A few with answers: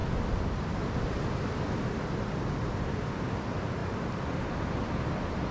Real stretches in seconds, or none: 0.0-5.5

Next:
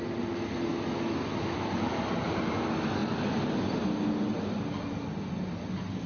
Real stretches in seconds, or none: 0.0-0.7; 1.9-6.1

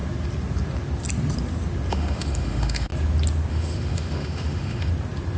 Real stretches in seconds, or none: 0.0-1.9; 2.9-3.5; 4.9-5.4

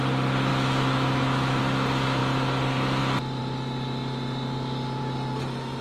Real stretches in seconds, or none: 0.0-0.5; 1.6-5.8

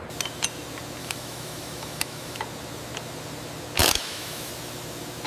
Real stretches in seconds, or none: 0.0-1.0; 2.4-3.8; 4.5-5.3

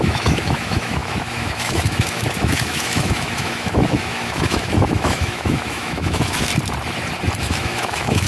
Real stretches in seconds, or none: 6.5-7.4

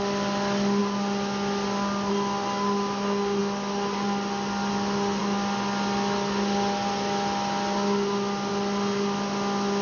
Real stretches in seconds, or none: 0.0-9.8

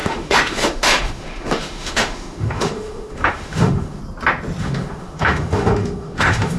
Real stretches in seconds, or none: 4.0-4.6